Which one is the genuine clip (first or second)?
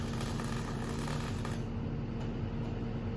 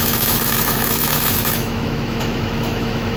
first